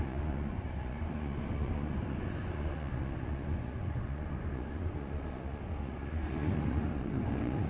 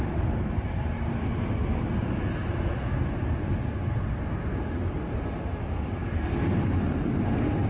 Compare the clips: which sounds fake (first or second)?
first